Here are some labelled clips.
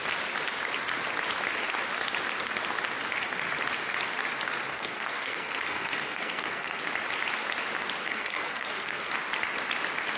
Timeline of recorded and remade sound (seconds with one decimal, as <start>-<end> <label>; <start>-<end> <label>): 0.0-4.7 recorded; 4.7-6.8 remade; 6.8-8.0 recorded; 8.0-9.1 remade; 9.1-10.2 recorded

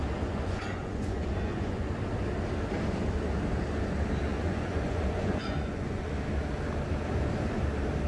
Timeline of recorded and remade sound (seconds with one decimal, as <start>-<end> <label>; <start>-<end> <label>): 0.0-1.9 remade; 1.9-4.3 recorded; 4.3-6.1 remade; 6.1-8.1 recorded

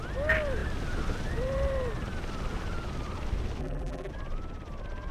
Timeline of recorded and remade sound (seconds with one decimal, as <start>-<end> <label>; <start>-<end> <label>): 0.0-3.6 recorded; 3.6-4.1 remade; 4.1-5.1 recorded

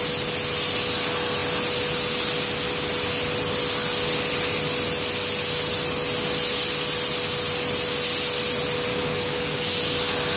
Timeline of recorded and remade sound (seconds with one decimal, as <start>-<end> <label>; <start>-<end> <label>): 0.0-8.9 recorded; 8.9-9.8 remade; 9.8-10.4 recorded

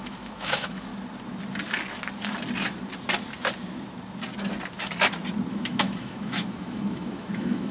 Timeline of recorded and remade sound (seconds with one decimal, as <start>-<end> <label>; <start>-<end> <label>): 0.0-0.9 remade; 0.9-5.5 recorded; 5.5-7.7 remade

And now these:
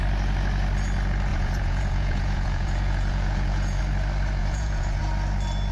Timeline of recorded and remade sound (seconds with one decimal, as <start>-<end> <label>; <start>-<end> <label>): 0.0-1.3 recorded; 1.3-3.8 remade; 3.8-4.4 recorded; 4.4-5.0 remade; 5.0-5.7 recorded

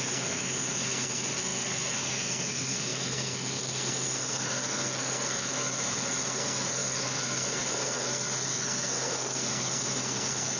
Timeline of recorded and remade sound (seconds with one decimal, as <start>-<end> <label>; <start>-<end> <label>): 0.0-10.6 remade